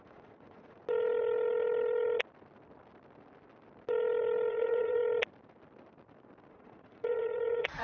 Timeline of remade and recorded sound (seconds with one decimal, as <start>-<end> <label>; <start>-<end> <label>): 0.0-0.8 remade; 0.8-4.5 recorded; 4.5-5.0 remade; 5.0-6.5 recorded; 6.5-7.8 remade